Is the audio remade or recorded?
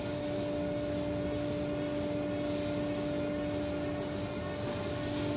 recorded